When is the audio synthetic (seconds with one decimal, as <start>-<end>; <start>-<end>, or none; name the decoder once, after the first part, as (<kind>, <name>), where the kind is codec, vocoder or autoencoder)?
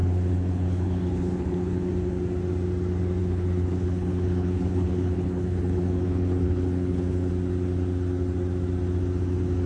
0.0-1.9 (codec, HILCodec); 3.2-7.3